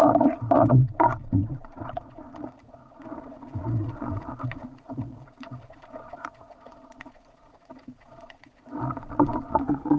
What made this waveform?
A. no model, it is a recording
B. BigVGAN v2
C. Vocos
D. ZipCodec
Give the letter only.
C